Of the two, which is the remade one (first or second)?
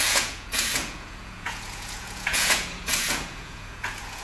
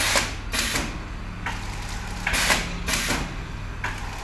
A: first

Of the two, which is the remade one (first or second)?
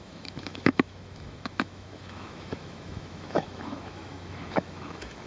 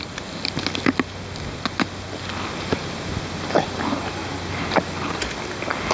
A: first